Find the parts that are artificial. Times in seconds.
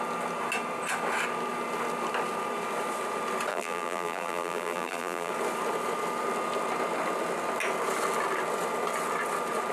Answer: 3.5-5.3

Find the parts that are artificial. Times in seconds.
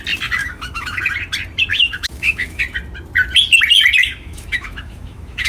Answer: 0.4-1.0; 1.7-2.6; 4.0-5.5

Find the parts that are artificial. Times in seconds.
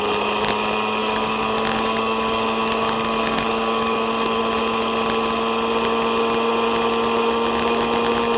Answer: 1.0-4.4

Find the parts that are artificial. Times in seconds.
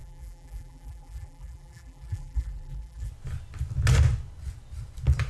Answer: 0.0-3.1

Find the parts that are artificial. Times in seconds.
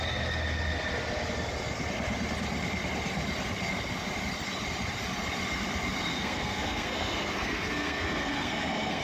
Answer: 6.1-9.0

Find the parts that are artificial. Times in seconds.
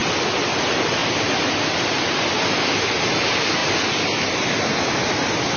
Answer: none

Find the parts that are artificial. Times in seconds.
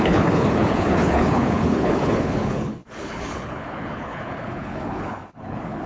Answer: 0.0-5.9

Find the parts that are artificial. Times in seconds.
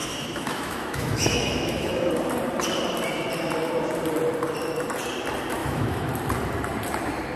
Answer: 0.0-2.1; 5.6-6.1